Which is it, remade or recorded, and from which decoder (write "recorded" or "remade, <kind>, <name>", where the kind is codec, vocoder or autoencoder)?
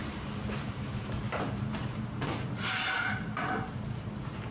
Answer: remade, vocoder, BigVGAN v2